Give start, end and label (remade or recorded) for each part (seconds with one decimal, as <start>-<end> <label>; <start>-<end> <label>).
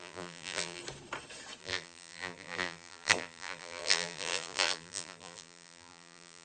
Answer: 0.0-0.8 remade; 0.8-1.6 recorded; 1.6-6.4 remade